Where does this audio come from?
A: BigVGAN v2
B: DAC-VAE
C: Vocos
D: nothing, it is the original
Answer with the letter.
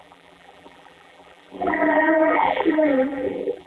A